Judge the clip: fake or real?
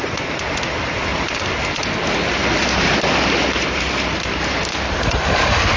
real